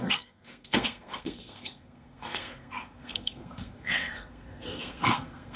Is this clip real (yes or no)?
no